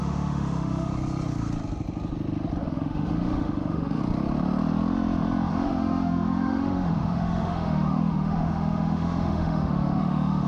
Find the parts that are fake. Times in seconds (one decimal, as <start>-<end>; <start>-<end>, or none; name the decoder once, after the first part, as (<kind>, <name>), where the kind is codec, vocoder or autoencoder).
0.0-0.9 (autoencoder, DAC-VAE); 2.6-4.0; 5.5-10.5